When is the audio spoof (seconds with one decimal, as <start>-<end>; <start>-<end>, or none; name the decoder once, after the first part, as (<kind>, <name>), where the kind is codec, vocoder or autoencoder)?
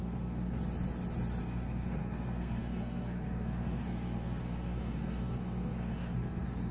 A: 0.0-0.6 (codec, SNAC); 1.4-6.7